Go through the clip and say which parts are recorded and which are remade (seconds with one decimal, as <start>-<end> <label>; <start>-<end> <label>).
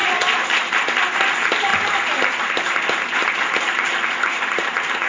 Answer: 0.0-5.1 recorded